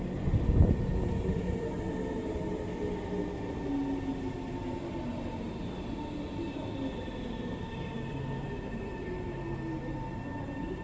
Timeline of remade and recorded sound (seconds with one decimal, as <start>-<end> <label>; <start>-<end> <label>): 0.0-10.8 recorded